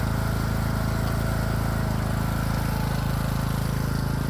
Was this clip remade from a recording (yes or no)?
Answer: no